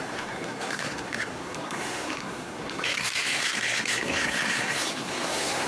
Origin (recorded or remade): remade